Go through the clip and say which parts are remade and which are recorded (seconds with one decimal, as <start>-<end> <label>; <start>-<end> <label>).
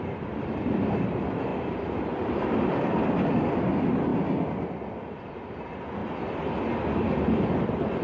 0.0-1.5 remade; 1.5-2.1 recorded; 2.1-6.0 remade; 6.0-7.6 recorded; 7.6-8.0 remade